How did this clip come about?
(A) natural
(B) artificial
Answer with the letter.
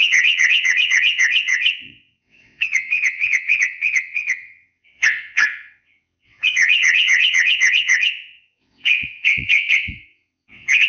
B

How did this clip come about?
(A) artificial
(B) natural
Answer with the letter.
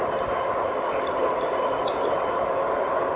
B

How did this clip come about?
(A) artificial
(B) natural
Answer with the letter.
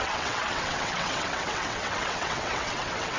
A